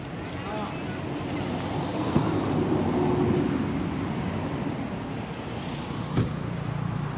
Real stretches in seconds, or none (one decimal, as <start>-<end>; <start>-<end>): 0.0-1.9; 2.4-7.2